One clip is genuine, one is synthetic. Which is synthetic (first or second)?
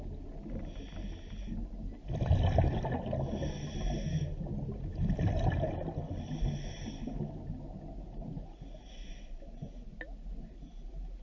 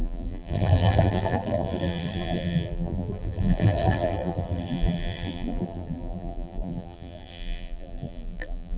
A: second